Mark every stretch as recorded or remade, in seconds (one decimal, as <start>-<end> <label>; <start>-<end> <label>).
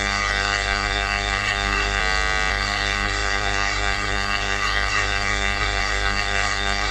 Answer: 0.0-2.0 remade; 2.0-2.5 recorded; 2.5-6.9 remade